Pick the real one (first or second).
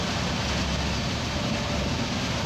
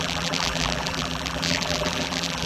first